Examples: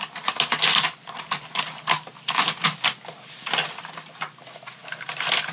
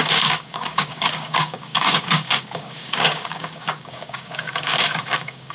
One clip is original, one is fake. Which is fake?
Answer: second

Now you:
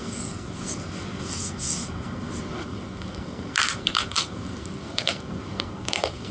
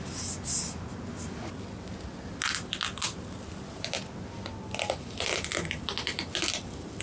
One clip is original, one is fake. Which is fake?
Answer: first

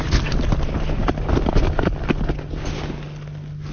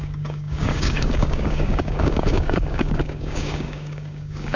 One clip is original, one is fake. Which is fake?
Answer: second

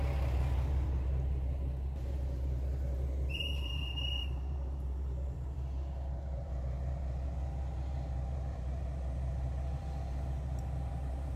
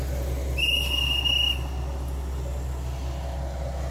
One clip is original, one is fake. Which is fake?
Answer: first